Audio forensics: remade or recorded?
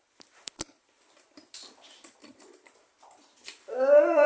remade